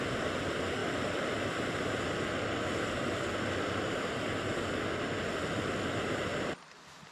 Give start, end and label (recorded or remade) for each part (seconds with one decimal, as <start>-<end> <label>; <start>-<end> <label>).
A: 0.0-6.3 recorded; 6.3-7.1 remade